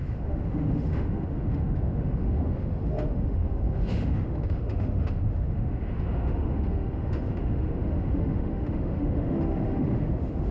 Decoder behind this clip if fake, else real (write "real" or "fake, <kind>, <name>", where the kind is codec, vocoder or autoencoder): fake, autoencoder, DAC-VAE